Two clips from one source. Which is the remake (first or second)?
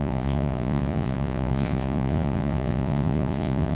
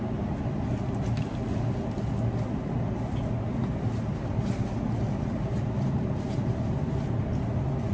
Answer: first